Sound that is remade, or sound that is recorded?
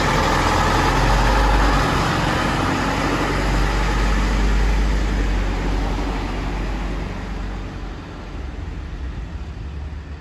recorded